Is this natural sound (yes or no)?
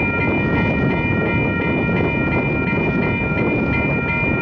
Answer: yes